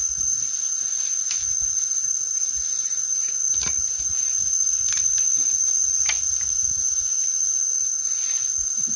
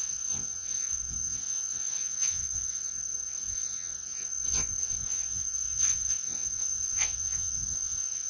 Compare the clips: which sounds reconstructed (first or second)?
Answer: second